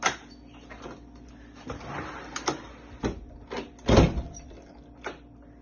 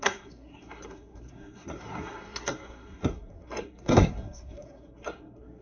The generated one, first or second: second